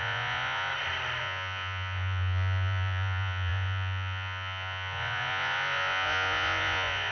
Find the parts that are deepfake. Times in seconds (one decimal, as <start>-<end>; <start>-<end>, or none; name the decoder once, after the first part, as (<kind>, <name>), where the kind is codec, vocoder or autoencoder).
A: 0.0-0.7 (vocoder, Vocos); 1.2-7.1